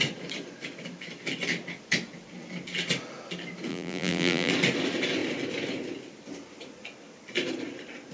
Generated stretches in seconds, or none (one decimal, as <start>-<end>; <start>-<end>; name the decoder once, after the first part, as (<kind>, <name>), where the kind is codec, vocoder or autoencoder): 3.7-4.5 (vocoder, BigVGAN v2)